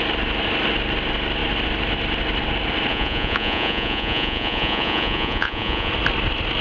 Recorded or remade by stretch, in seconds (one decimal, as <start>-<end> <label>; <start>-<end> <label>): 0.0-2.9 recorded; 2.9-5.9 remade; 5.9-6.6 recorded